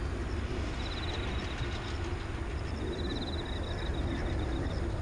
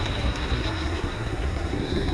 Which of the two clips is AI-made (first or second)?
second